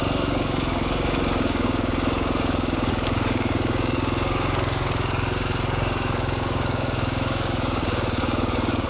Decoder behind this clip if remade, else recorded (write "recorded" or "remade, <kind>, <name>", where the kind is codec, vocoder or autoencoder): remade, codec, DAC